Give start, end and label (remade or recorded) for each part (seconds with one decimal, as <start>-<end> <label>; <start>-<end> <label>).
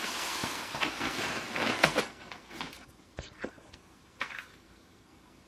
0.0-5.5 remade